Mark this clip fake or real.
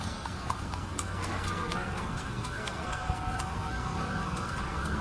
fake